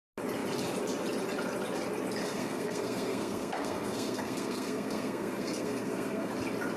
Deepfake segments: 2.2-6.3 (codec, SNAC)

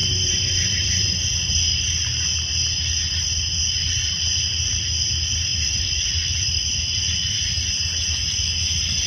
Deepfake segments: 0.0-1.5 (vocoder, BigVGAN v2); 5.5-6.7

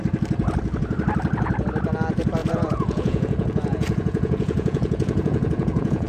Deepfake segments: 2.4-6.1 (vocoder, Vocos)

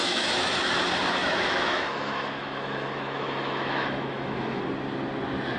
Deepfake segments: 0.0-0.7 (autoencoder, DAC-VAE); 1.2-4.6

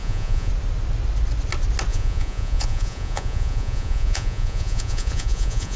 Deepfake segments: 0.0-0.5 (vocoder, Vocos); 1.9-5.8